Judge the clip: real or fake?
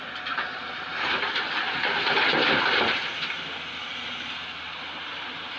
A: real